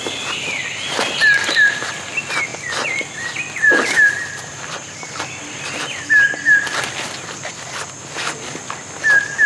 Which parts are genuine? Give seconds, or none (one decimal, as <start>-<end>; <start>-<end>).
0.0-9.5